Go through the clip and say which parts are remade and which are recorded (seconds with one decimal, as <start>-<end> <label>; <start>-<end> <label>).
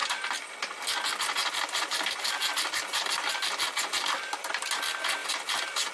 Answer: 0.0-0.5 remade; 0.5-1.4 recorded; 1.4-4.6 remade; 4.6-5.2 recorded; 5.2-5.9 remade